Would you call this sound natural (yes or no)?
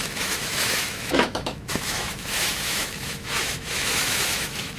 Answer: no